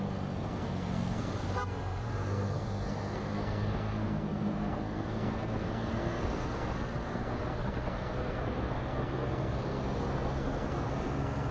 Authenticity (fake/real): fake